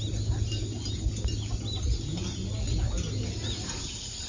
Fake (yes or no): no